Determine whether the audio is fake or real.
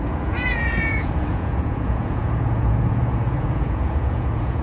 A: fake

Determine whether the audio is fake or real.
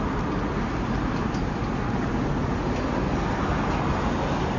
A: real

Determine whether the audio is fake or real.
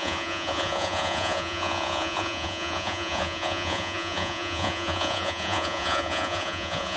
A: fake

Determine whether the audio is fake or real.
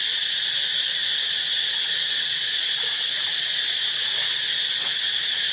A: fake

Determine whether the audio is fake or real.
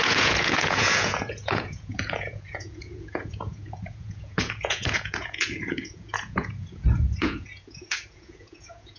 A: fake